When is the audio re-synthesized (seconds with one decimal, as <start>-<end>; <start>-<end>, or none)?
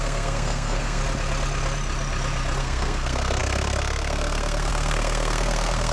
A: 0.0-1.0; 2.6-5.9